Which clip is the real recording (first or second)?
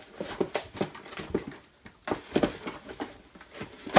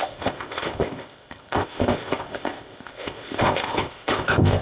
first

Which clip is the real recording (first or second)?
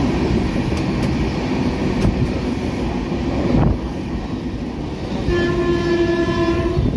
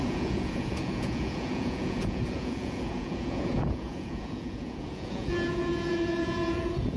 first